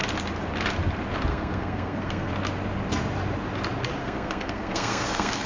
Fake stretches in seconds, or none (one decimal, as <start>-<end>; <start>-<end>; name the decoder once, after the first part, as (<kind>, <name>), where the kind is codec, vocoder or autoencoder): 1.3-2.3 (codec, SNAC); 4.0-5.5